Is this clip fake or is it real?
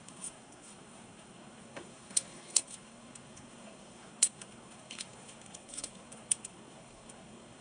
fake